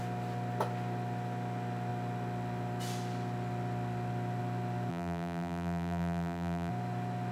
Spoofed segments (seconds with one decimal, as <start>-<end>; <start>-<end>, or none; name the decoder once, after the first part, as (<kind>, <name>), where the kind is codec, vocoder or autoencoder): 4.9-6.7 (vocoder, BigVGAN v2)